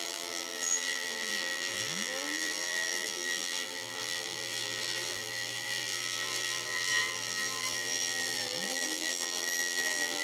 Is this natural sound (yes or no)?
no